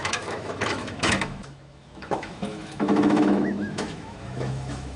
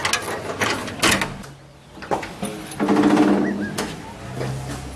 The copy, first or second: first